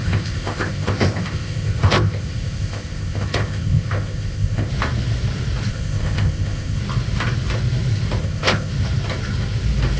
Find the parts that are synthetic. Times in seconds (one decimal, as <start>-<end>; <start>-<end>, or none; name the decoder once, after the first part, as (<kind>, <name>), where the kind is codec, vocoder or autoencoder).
0.0-4.7 (codec, ZipCodec); 5.7-6.8; 8.2-8.7